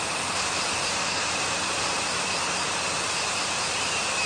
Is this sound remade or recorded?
recorded